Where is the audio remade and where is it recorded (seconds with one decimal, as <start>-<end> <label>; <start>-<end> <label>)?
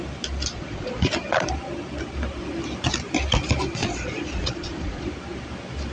0.0-0.5 recorded; 0.5-1.5 remade; 1.5-3.8 recorded; 3.8-5.1 remade; 5.1-5.9 recorded